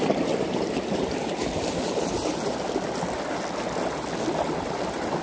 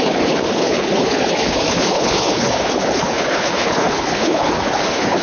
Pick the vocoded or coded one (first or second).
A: second